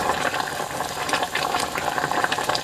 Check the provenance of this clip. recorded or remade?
remade